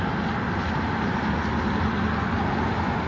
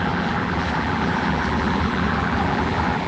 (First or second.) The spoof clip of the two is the second